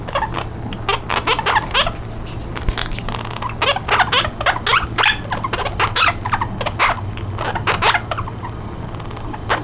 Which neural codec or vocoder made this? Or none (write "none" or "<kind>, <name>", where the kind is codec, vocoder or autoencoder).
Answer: none